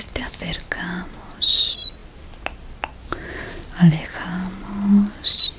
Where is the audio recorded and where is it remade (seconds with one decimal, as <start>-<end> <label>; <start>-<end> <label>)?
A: 0.0-5.6 recorded